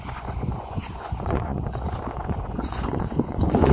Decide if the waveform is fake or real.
fake